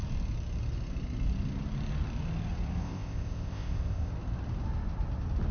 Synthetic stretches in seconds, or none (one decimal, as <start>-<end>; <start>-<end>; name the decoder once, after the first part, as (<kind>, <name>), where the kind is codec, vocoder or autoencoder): 2.8-4.1 (codec, ZipCodec)